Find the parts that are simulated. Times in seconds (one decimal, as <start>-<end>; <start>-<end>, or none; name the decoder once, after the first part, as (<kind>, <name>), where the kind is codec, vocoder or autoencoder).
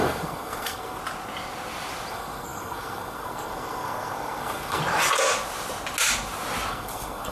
0.0-1.0 (codec, SNAC); 2.1-4.8; 6.7-7.3